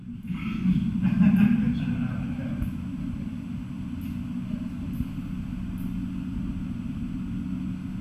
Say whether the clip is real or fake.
real